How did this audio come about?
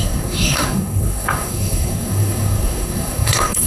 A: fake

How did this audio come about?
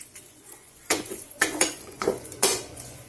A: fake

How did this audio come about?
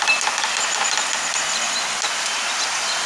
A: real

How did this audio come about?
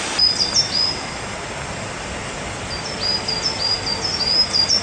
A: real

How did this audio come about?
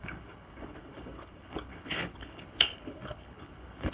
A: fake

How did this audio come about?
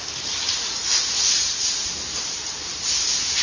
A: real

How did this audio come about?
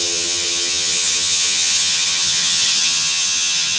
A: fake